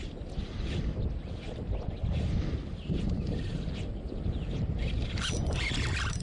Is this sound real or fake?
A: real